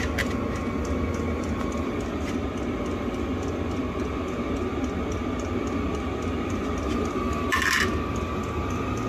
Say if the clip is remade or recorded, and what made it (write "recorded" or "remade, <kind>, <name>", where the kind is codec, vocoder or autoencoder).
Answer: recorded